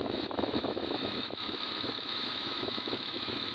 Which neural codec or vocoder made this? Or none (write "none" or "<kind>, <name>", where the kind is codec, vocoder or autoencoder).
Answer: autoencoder, DAC-VAE